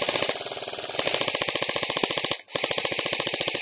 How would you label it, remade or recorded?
recorded